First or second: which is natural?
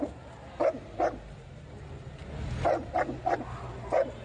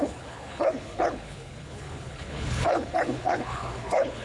first